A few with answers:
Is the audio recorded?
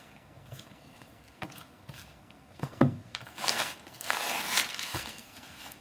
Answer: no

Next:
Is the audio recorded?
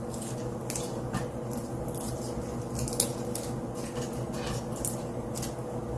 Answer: yes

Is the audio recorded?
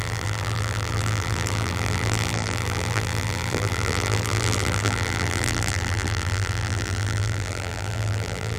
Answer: no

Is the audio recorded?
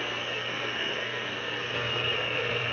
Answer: no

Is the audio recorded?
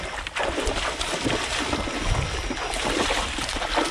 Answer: yes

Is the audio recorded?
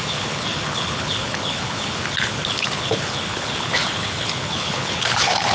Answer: no